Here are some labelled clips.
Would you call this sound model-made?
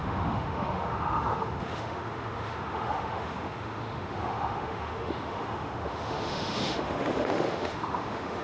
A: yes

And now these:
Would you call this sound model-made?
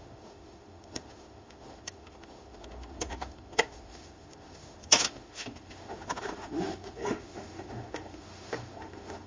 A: yes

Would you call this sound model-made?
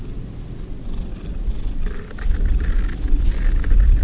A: no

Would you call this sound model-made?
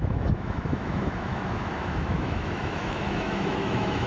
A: yes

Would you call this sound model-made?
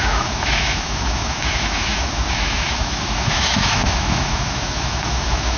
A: yes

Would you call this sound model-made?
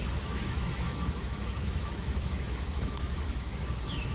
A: yes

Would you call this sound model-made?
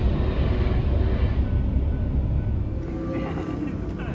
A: no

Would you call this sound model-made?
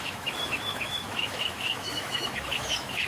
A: yes